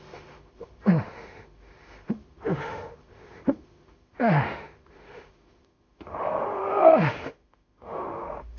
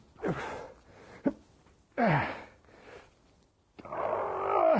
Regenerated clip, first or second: first